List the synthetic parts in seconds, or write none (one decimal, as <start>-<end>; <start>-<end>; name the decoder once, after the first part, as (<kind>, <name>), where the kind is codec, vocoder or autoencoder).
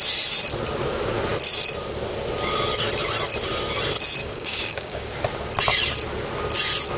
4.2-5.1 (codec, DAC)